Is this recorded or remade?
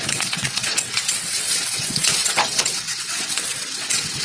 remade